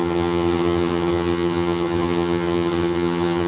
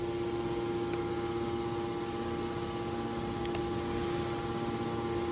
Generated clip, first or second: first